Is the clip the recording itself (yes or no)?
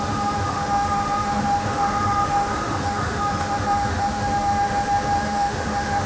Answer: no